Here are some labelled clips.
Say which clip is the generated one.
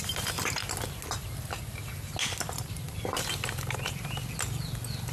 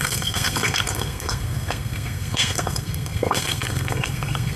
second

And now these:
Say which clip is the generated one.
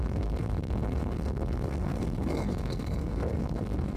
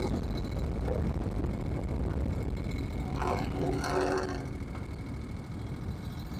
first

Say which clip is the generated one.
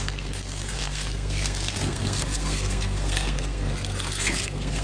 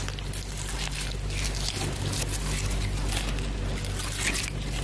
first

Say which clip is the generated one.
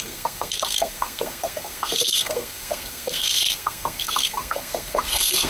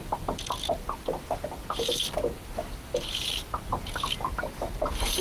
first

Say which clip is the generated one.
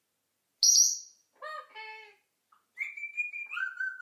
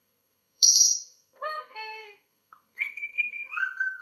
second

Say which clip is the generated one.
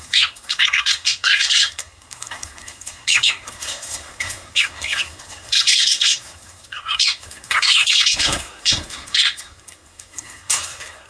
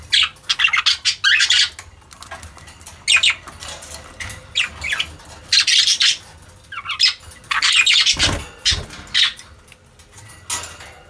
first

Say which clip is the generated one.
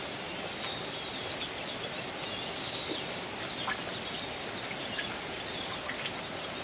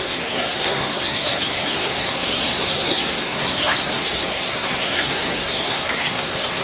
second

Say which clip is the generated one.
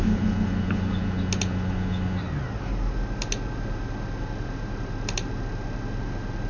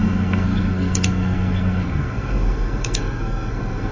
second